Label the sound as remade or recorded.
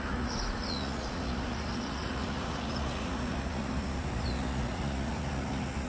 remade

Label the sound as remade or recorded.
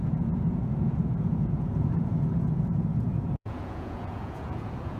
remade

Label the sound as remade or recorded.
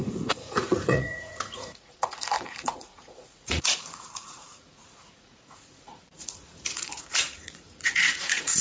remade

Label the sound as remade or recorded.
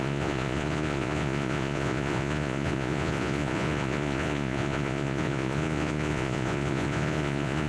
remade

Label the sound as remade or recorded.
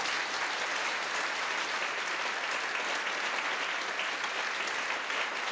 recorded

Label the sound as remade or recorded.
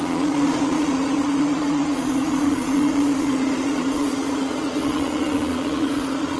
remade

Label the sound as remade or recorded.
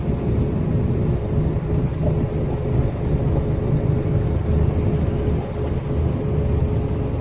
recorded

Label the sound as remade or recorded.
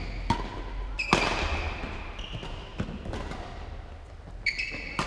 recorded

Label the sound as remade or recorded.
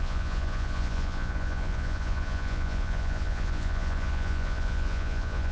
remade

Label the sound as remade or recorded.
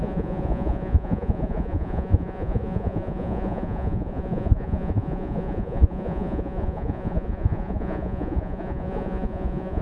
remade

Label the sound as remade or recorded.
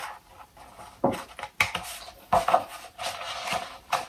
recorded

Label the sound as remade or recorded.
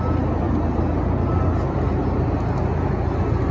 recorded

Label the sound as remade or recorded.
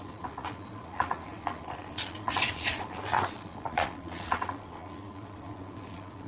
remade